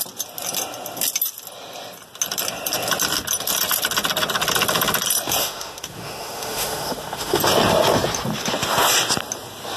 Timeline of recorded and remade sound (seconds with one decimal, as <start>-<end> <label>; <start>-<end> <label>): 0.0-5.4 recorded; 5.4-7.4 remade; 7.4-9.8 recorded